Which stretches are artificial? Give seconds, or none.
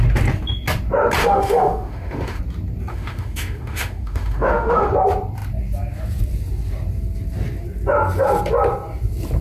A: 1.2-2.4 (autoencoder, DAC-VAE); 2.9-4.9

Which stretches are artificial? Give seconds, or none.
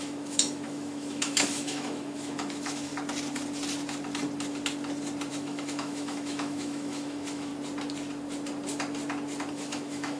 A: 0.0-2.9 (autoencoder, DAC-VAE); 5.3-7.5; 9.5-10.2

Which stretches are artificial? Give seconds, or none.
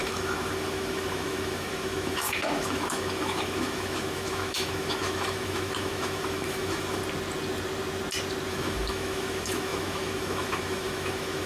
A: 0.0-7.0 (autoencoder, DAC-VAE); 8.5-11.5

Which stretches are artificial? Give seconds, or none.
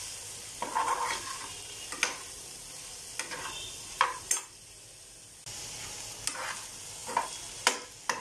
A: none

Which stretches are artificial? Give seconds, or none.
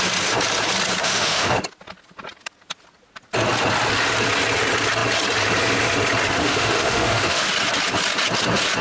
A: 1.0-1.5 (autoencoder, DAC-VAE); 6.4-7.5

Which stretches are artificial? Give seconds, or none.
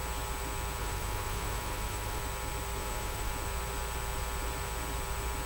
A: 0.8-2.2 (autoencoder, DAC-VAE); 2.8-3.3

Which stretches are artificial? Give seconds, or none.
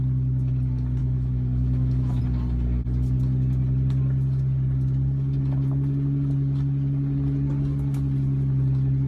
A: 1.0-2.2 (autoencoder, DAC-VAE)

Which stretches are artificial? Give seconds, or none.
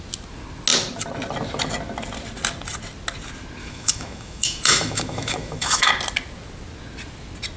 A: 3.6-5.9 (autoencoder, DAC-VAE)